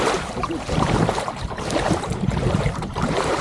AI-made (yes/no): yes